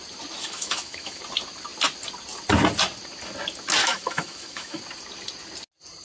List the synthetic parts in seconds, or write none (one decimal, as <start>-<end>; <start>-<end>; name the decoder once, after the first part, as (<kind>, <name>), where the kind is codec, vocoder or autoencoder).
0.4-1.2 (autoencoder, DAC-VAE); 3.8-4.8